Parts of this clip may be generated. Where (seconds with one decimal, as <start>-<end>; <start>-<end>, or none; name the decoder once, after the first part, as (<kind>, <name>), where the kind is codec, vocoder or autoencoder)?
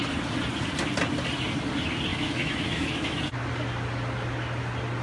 2.1-3.2 (autoencoder, DAC-VAE)